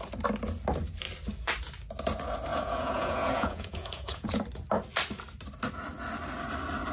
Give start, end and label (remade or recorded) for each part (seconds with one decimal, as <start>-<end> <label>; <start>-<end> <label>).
0.0-2.5 recorded; 2.5-4.4 remade; 4.4-6.9 recorded